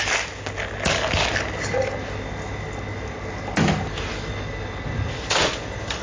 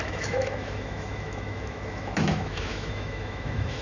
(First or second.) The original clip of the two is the first